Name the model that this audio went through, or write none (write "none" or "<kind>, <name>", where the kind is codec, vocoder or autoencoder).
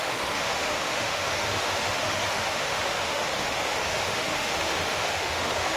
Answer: autoencoder, DAC-VAE